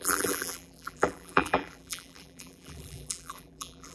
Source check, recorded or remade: remade